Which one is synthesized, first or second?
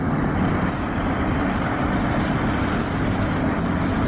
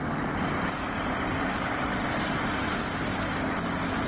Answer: first